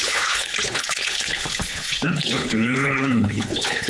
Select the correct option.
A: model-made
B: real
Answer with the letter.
A